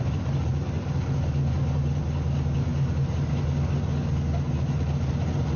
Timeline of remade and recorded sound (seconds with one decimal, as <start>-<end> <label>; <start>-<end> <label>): 0.0-5.6 recorded